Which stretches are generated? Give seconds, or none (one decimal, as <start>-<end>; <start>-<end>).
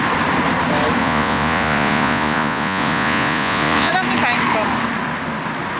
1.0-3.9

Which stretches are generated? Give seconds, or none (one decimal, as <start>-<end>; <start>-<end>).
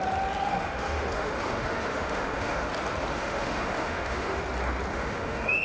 0.5-2.7; 3.1-4.4; 4.9-5.6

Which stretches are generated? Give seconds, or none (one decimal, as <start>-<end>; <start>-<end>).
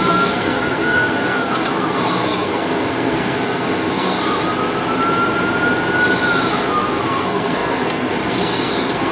0.0-4.4; 6.5-9.1